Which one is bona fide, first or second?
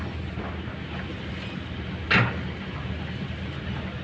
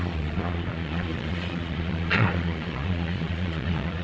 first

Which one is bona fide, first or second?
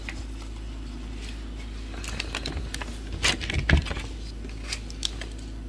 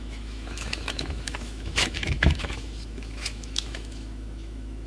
first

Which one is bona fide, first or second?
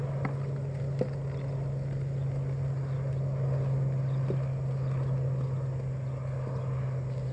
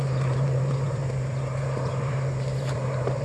first